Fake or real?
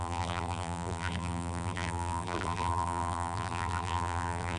fake